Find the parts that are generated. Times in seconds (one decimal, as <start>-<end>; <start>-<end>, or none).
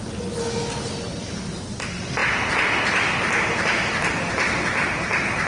none